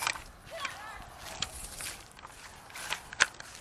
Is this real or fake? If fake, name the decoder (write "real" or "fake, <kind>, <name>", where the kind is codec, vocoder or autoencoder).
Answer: real